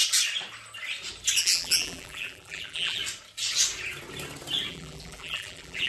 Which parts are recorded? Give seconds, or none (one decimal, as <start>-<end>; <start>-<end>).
0.0-1.4; 3.0-4.7